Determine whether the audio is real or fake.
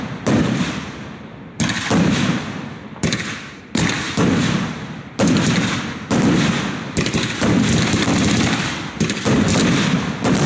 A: fake